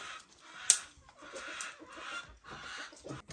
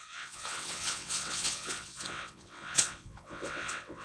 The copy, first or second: second